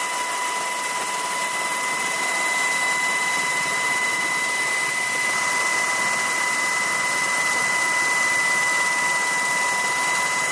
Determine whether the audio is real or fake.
real